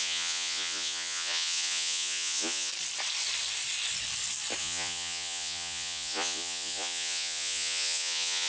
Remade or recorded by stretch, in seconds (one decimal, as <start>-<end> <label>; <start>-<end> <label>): 0.0-2.7 remade; 2.7-4.6 recorded; 4.6-8.5 remade